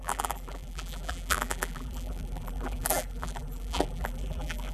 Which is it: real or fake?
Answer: fake